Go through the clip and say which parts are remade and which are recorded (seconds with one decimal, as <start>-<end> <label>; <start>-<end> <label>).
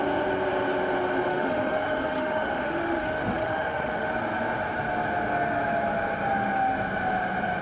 0.0-1.3 recorded; 1.3-4.1 remade; 4.1-7.6 recorded